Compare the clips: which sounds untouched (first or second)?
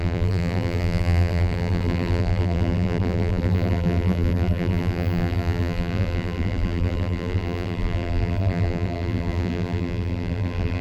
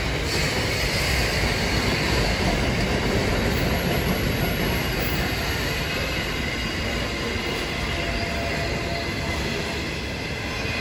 second